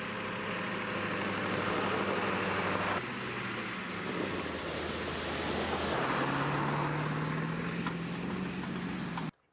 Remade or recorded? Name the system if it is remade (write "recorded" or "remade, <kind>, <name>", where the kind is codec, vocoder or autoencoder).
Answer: recorded